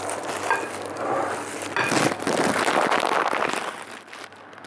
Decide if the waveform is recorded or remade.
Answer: recorded